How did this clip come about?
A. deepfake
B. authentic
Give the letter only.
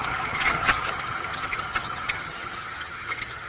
A